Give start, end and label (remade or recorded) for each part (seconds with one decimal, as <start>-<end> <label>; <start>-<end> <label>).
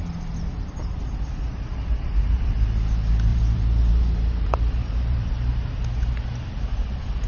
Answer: 0.0-1.0 recorded; 1.0-2.5 remade; 2.5-3.3 recorded; 3.3-7.3 remade